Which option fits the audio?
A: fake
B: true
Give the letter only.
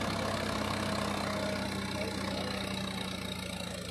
B